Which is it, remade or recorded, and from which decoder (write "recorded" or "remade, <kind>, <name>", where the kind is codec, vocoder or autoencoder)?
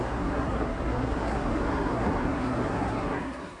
remade, codec, SNAC